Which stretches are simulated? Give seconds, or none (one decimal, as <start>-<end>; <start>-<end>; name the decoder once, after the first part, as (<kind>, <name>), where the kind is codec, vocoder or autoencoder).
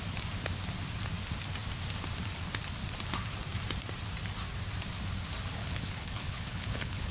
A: 5.6-7.1 (codec, HILCodec)